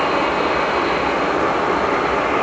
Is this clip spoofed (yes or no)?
no